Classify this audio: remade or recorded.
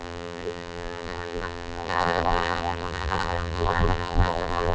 remade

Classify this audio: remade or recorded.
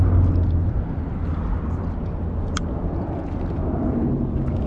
recorded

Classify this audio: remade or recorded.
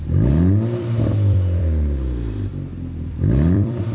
remade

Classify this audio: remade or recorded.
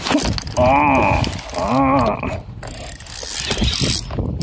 recorded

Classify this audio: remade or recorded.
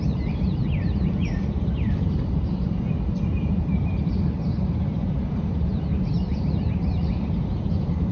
remade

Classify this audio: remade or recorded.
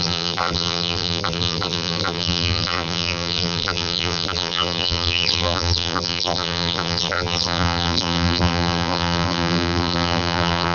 remade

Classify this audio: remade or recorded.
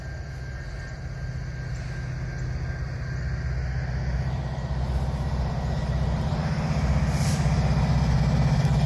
recorded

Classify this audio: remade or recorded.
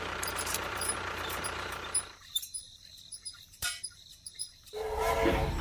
remade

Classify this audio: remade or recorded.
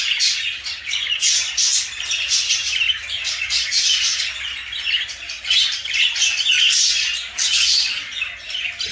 recorded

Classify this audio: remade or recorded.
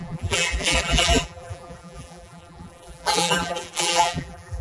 remade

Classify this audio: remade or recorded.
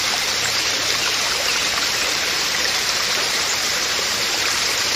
remade